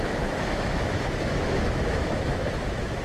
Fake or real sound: fake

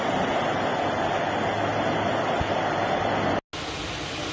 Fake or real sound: real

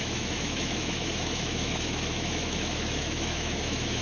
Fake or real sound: fake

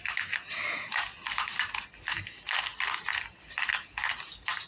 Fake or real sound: real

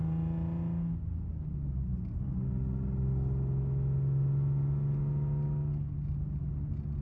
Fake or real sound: real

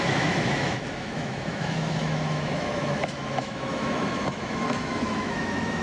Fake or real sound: fake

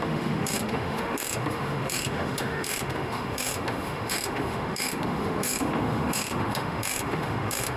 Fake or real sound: fake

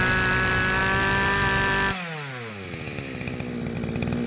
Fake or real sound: real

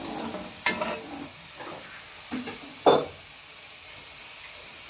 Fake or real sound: real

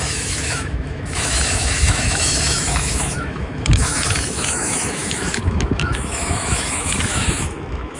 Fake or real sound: fake